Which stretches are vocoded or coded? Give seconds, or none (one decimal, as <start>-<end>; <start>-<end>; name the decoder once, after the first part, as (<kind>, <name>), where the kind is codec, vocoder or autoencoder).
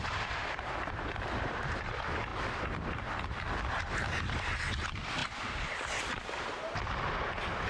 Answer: 0.0-5.2 (vocoder, BigVGAN v2); 6.5-7.7